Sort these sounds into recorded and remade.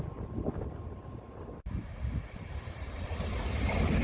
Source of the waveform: recorded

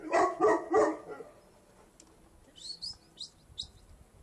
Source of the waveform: recorded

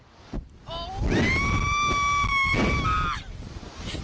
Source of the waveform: recorded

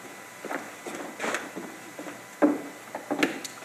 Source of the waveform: recorded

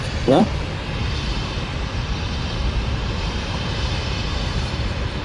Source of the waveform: remade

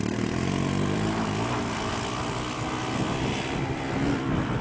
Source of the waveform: remade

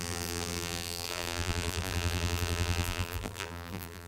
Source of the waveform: remade